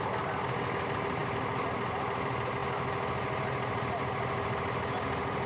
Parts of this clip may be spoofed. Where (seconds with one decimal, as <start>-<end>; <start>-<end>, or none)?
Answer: none